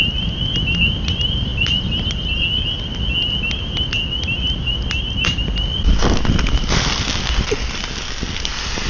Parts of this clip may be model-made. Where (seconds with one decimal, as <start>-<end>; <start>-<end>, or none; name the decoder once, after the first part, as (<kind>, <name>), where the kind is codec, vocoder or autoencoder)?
none